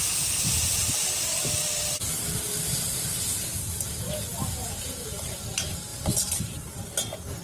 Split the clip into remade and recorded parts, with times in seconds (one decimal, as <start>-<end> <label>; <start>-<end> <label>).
0.0-0.9 recorded; 0.9-2.0 remade; 2.0-5.9 recorded; 5.9-7.4 remade